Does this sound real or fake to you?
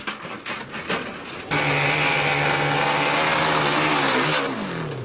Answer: real